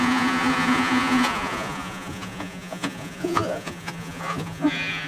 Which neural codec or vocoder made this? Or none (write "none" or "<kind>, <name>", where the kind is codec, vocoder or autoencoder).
vocoder, Vocos